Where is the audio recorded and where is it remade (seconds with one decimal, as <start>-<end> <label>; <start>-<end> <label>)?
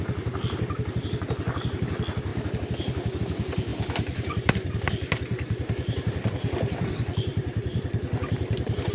0.0-3.7 recorded; 3.7-8.9 remade